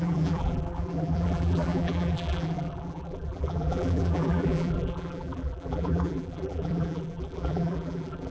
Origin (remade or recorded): remade